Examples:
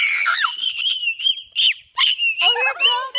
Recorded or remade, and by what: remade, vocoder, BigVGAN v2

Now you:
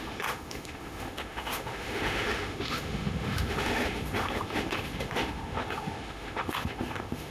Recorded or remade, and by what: remade, autoencoder, DAC-VAE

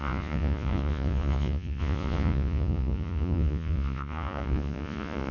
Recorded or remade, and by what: remade, vocoder, Vocos